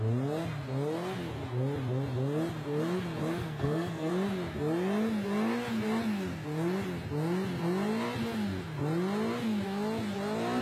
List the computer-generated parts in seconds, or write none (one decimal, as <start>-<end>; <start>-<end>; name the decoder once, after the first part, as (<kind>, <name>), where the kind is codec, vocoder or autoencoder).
3.4-4.1 (codec, SNAC)